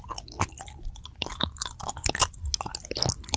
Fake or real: real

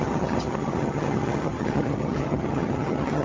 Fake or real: fake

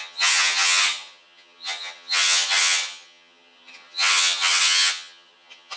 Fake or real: fake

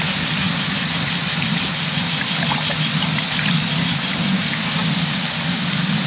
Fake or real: real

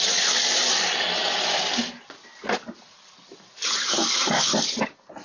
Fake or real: real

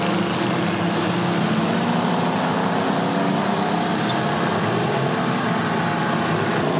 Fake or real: real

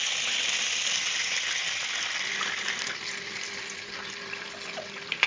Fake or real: real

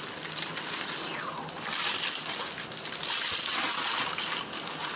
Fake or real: real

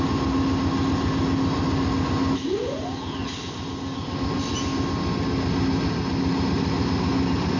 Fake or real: real